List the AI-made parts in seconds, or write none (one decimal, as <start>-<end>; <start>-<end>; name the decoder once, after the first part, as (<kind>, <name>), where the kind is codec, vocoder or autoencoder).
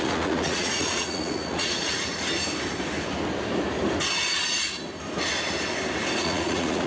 0.0-2.1 (vocoder, Vocos); 6.2-6.9